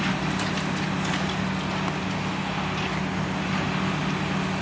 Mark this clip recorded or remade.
recorded